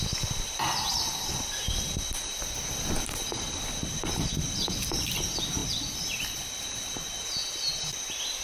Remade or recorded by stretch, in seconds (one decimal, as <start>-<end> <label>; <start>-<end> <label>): 0.0-8.4 recorded